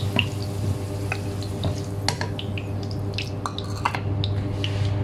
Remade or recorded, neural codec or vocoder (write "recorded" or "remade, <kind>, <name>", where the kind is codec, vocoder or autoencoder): recorded